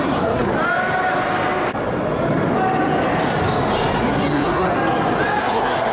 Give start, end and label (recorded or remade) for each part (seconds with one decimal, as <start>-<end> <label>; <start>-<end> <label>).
0.0-0.5 remade; 0.5-4.0 recorded; 4.0-4.7 remade; 4.7-5.4 recorded; 5.4-5.9 remade